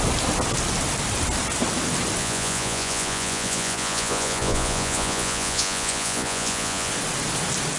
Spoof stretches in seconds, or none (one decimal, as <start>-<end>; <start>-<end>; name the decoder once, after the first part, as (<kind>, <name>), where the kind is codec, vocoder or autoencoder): 2.2-6.9 (vocoder, Vocos)

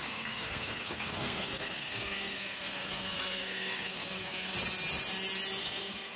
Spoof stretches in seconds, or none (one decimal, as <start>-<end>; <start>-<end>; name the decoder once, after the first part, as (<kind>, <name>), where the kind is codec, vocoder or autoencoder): 0.0-4.5 (codec, SNAC); 5.6-6.2

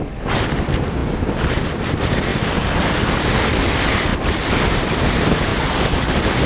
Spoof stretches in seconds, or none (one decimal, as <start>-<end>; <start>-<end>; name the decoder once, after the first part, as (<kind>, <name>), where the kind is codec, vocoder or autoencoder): 0.0-1.0 (vocoder, BigVGAN v2); 1.7-6.5

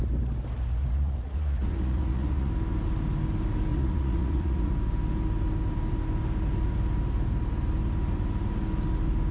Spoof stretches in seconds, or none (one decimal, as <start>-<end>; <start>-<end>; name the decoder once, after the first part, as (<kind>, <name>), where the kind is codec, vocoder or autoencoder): 0.8-2.5 (vocoder, Vocos); 3.7-4.7

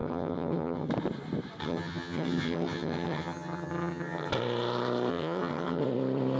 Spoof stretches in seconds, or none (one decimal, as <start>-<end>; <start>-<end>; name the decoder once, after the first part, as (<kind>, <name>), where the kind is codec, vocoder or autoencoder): 0.0-0.9 (vocoder, HiFi-GAN); 1.6-4.3; 5.1-5.8

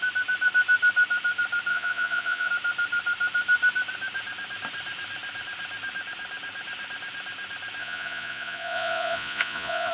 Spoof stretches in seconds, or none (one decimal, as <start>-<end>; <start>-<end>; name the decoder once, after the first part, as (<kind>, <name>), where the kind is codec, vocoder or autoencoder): 1.7-2.5 (vocoder, Vocos); 7.8-9.9